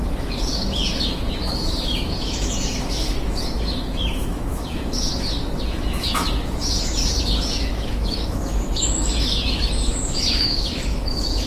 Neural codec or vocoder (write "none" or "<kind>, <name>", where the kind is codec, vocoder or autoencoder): autoencoder, DAC-VAE